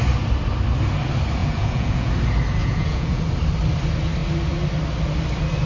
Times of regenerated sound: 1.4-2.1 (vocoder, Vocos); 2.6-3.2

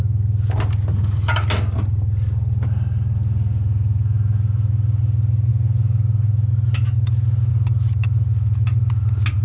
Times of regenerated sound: none

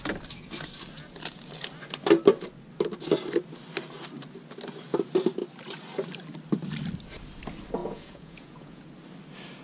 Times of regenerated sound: 7.8-8.8 (vocoder, Vocos)

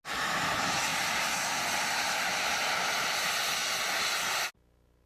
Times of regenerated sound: none

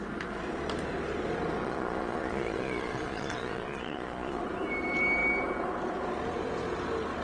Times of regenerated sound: 1.6-4.4 (vocoder, Vocos)

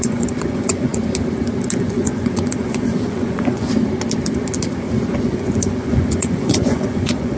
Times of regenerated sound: 0.0-0.9 (vocoder, Vocos); 1.8-3.7; 5.2-7.4

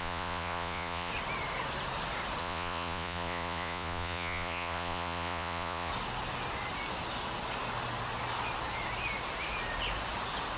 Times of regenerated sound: 0.0-1.1 (vocoder, Vocos); 2.4-5.9

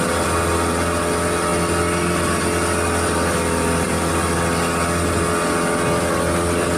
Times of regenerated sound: none